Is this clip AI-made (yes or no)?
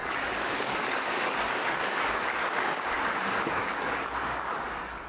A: yes